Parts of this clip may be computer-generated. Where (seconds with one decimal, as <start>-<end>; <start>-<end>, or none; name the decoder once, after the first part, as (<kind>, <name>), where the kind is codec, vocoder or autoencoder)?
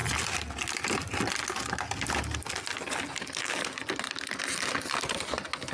none